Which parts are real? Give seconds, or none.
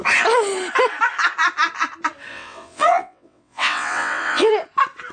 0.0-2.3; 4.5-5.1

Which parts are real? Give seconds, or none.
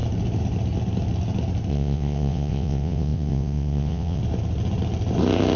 0.0-1.7; 4.2-5.6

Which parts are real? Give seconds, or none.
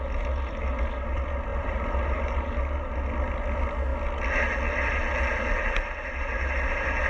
0.0-1.5; 2.5-7.1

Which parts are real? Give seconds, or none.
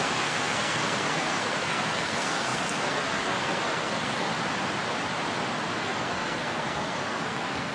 4.3-5.8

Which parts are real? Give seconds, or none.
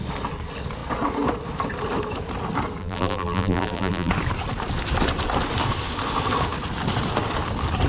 0.0-2.8; 4.1-7.9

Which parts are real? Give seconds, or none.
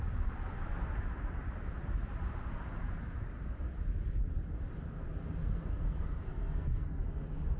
0.0-5.4; 7.0-7.6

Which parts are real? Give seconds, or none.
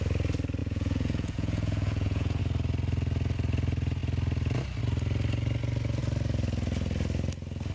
0.0-0.6; 2.4-7.7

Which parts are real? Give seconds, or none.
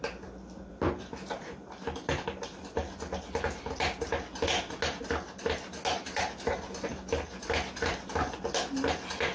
0.0-0.7; 2.8-7.3